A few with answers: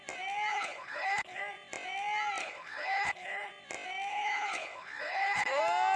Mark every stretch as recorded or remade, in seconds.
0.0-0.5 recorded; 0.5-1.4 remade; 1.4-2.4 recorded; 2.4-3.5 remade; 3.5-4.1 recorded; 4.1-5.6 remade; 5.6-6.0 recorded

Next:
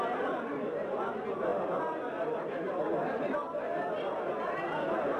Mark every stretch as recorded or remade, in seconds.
0.0-5.2 recorded

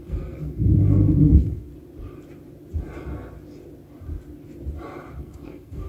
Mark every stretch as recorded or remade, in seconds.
0.0-1.7 remade; 1.7-5.2 recorded; 5.2-5.9 remade

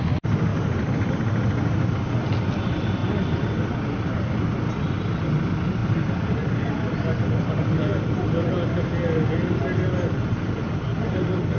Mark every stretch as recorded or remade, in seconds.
0.0-11.6 recorded

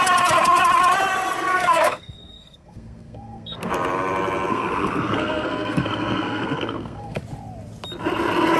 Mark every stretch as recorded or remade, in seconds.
0.0-1.5 recorded; 1.5-3.7 remade; 3.7-4.5 recorded; 4.5-7.2 remade; 7.2-8.6 recorded